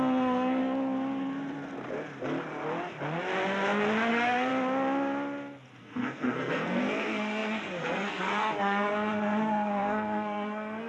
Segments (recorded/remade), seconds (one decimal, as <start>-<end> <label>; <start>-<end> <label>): 0.0-0.6 remade; 0.6-4.1 recorded; 4.1-4.5 remade; 4.5-5.8 recorded; 5.8-10.9 remade